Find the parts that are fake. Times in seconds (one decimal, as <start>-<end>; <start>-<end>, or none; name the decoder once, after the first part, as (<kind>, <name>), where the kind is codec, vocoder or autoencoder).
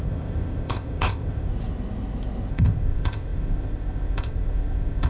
0.0-1.5 (codec, ZipCodec); 2.5-5.1